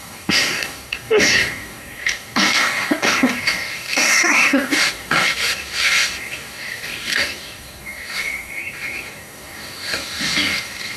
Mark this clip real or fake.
fake